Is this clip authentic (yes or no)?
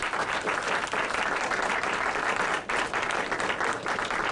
yes